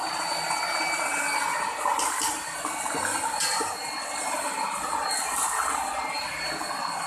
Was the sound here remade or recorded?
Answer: recorded